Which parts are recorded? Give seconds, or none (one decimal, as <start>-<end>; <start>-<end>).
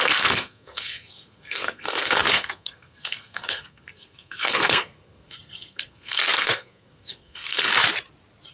7.7-8.5